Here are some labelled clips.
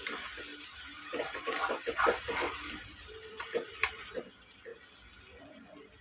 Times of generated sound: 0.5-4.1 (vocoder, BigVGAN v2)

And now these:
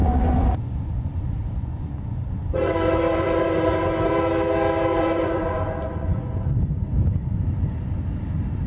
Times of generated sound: 0.0-4.1 (vocoder, Vocos); 4.9-6.6

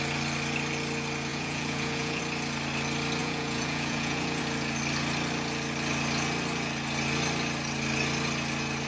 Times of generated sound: 1.3-2.2 (vocoder, Vocos); 3.2-4.4

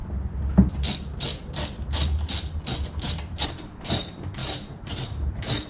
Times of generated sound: 2.9-5.7 (vocoder, BigVGAN v2)